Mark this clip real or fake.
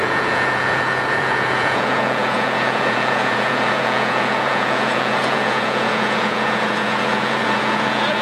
fake